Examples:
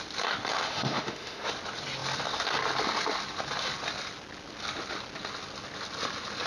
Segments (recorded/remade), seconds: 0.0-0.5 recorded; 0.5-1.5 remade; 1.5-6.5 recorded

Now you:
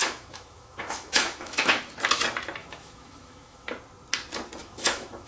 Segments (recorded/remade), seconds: 0.0-1.8 remade; 1.8-2.6 recorded; 2.6-3.7 remade; 3.7-4.6 recorded; 4.6-5.3 remade